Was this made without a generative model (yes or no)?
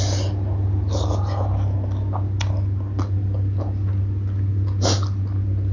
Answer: yes